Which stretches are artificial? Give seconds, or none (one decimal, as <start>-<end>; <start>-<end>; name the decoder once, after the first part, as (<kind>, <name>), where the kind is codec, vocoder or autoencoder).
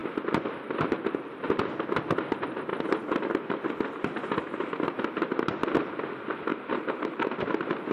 6.5-7.4 (vocoder, BigVGAN v2)